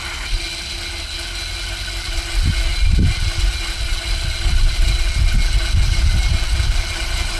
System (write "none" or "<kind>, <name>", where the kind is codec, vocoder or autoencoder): none